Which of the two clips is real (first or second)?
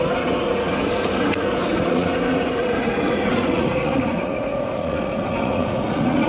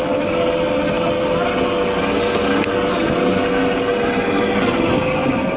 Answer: second